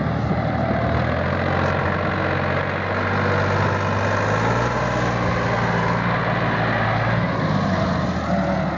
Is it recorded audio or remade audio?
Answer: recorded